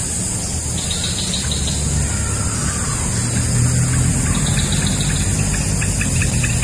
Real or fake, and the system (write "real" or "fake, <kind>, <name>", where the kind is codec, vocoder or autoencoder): real